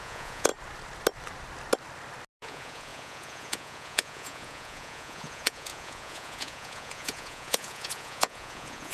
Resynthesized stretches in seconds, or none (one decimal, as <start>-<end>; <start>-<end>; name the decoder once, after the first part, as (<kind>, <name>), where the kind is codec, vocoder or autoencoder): 0.0-0.5 (vocoder, Vocos); 2.4-8.9